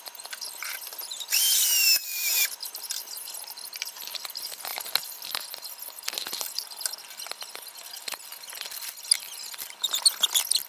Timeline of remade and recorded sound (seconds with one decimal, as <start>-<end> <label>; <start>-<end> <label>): 0.0-10.7 recorded